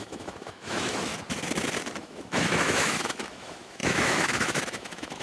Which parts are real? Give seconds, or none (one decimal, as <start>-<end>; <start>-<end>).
1.1-2.0